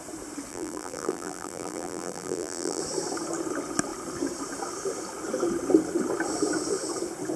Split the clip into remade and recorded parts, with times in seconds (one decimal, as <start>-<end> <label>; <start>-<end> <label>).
0.0-0.5 recorded; 0.5-2.8 remade; 2.8-7.4 recorded